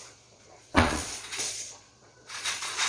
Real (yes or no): no